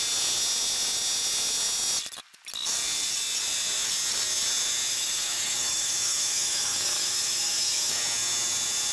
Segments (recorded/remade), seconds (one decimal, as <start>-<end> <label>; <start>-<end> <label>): 0.0-4.9 recorded; 4.9-8.0 remade; 8.0-8.9 recorded